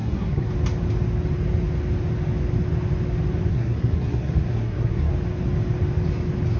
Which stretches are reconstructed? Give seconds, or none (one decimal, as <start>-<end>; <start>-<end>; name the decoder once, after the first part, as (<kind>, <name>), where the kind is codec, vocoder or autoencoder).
0.0-0.5 (codec, SNAC); 3.5-5.1